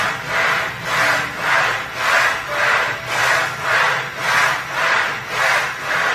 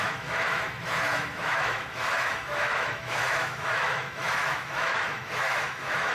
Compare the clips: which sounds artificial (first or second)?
second